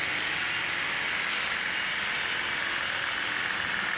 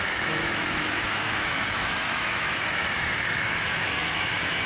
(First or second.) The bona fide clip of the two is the first